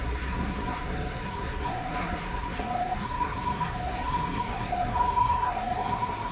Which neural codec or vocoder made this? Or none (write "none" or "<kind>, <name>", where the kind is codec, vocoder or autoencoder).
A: codec, SNAC